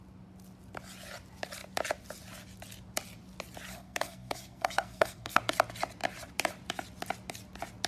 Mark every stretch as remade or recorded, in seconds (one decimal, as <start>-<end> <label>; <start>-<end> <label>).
0.0-3.7 recorded; 3.7-5.4 remade; 5.4-7.9 recorded